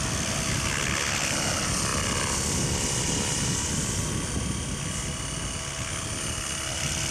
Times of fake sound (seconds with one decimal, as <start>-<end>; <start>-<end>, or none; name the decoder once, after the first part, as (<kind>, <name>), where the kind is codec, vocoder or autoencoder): none